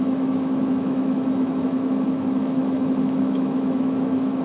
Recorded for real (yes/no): no